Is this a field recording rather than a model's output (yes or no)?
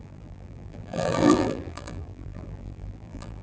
no